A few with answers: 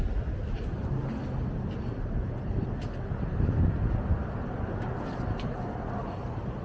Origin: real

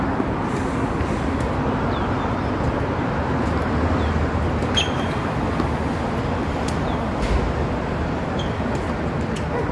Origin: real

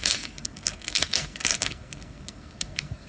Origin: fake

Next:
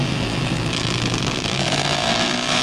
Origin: fake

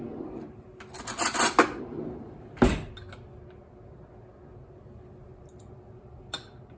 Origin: real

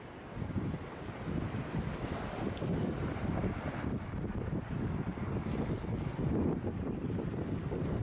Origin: real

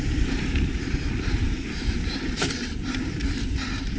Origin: fake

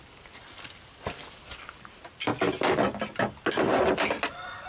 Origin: real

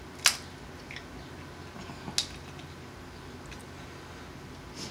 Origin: real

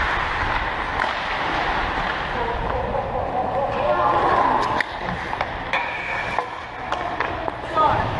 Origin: real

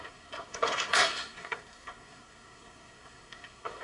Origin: fake